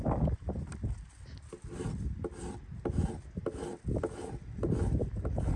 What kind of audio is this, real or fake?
real